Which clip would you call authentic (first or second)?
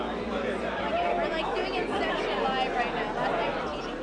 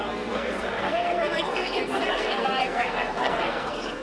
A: first